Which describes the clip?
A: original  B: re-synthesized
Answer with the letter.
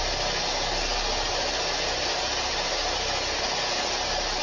A